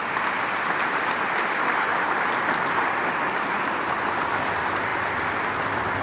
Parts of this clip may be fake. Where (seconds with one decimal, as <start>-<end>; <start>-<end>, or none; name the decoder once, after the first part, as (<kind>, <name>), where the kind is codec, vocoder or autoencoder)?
0.0-6.0 (vocoder, BigVGAN v2)